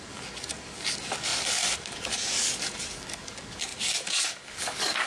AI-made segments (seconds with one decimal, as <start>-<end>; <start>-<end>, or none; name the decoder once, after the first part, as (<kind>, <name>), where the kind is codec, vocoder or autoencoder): 0.0-5.1 (codec, DAC)